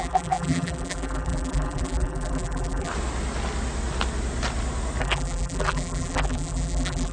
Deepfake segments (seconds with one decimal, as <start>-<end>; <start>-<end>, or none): 0.0-2.9; 5.0-7.1